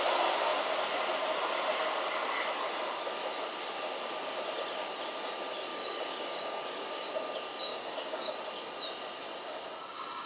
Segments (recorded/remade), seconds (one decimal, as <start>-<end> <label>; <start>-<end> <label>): 0.0-5.7 recorded; 5.7-7.1 remade; 7.1-7.7 recorded; 7.7-8.3 remade; 8.3-10.3 recorded

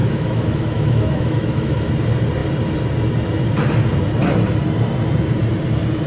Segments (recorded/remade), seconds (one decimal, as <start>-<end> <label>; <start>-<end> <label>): 0.0-1.9 remade; 1.9-6.1 recorded

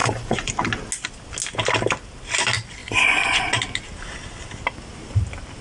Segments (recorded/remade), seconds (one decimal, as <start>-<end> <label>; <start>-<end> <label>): 0.0-0.5 remade; 0.5-2.8 recorded; 2.8-3.5 remade; 3.5-5.6 recorded

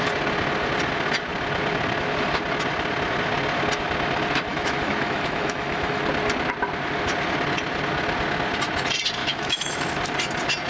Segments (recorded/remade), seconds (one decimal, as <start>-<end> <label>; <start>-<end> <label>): 0.0-4.5 recorded; 4.5-6.0 remade; 6.0-9.2 recorded; 9.2-9.8 remade; 9.8-10.7 recorded

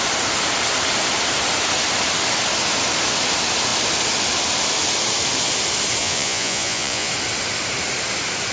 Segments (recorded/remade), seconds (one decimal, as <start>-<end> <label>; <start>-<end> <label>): 0.0-6.0 recorded; 6.0-7.1 remade; 7.1-8.5 recorded